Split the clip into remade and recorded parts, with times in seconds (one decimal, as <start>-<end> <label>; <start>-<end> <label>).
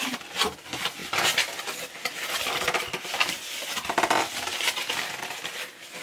0.0-6.0 recorded